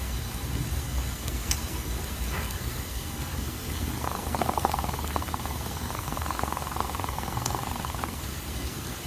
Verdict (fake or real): fake